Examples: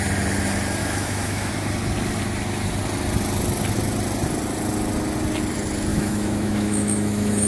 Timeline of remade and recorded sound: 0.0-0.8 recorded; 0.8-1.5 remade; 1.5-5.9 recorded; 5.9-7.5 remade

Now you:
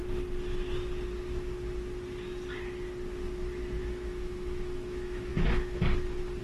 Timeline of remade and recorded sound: 0.0-3.8 recorded; 3.8-5.3 remade; 5.3-6.4 recorded

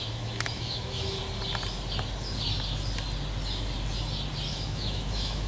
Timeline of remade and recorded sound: 0.0-1.2 remade; 1.2-4.5 recorded; 4.5-5.5 remade

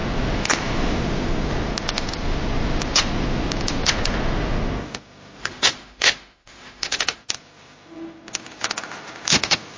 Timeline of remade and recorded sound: 0.0-5.4 recorded; 5.4-7.2 remade; 7.2-9.8 recorded

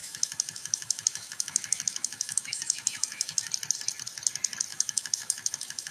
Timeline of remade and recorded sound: 0.0-3.5 remade; 3.5-4.7 recorded; 4.7-5.9 remade

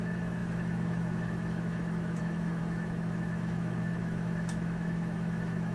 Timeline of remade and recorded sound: 0.0-5.7 remade